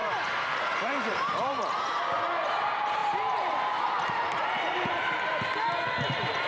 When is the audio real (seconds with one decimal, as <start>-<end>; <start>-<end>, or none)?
2.0-3.0; 5.0-6.5